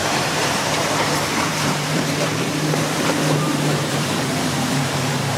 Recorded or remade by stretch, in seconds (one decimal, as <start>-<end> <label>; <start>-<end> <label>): 0.0-5.4 remade